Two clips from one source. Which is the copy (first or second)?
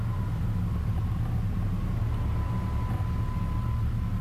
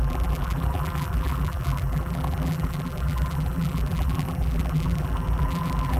second